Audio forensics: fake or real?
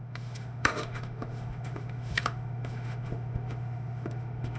fake